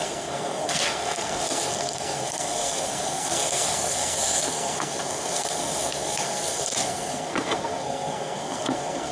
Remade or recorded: remade